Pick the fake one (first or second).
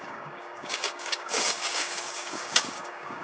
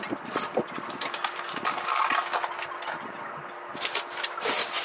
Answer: first